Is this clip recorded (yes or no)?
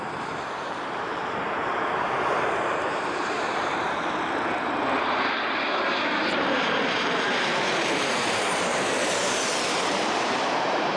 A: no